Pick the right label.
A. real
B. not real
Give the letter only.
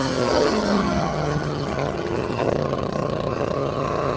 B